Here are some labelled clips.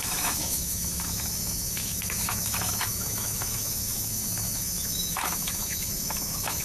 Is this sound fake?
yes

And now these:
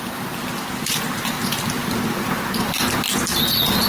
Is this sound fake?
no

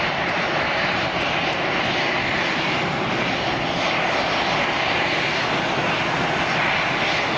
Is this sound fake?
no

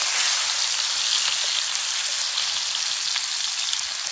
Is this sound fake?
no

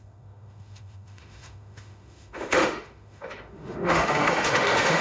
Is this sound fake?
yes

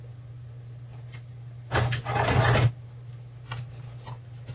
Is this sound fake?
no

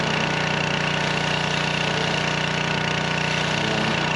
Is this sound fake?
no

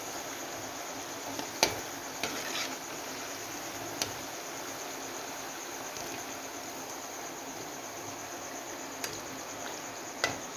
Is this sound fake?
no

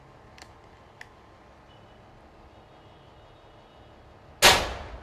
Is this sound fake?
no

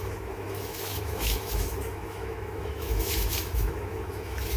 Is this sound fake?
yes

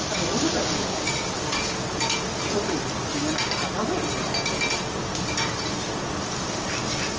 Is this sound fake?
no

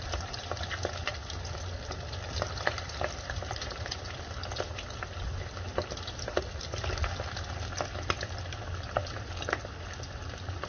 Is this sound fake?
no